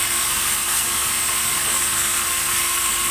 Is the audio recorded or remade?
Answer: remade